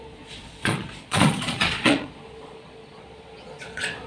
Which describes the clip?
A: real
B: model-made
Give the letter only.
B